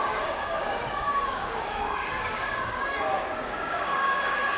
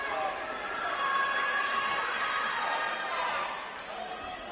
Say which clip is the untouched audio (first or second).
second